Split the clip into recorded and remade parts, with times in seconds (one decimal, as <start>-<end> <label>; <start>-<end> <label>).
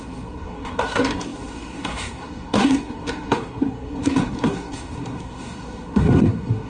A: 0.0-6.7 remade